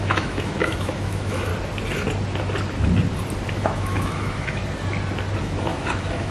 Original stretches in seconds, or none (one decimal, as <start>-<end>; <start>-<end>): 1.5-3.5; 4.6-5.4